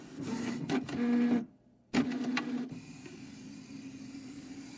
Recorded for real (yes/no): yes